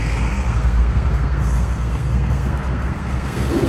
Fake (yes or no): yes